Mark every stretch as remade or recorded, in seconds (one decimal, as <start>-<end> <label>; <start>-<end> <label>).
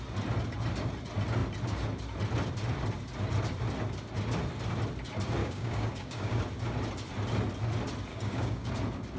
0.0-5.4 recorded; 5.4-6.4 remade; 6.4-8.1 recorded; 8.1-8.7 remade; 8.7-9.2 recorded